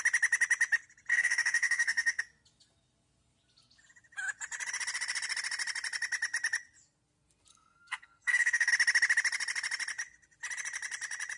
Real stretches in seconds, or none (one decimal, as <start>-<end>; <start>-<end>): 0.0-1.1; 2.2-7.5; 8.7-11.4